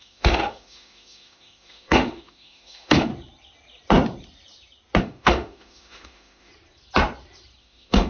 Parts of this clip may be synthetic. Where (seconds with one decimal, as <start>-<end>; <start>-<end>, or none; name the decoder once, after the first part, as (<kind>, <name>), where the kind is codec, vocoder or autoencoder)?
0.0-3.1 (autoencoder, DAC-VAE); 5.0-6.5; 7.6-8.1